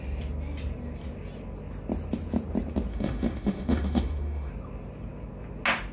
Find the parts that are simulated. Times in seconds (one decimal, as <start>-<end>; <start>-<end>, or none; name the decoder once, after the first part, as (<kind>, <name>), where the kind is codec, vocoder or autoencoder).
2.9-4.5 (autoencoder, DAC-VAE)